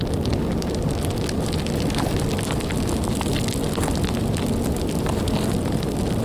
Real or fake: real